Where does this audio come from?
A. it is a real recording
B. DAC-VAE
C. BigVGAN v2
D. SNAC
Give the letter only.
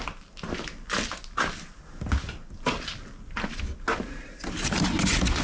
A